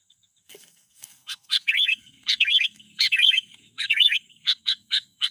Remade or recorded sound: remade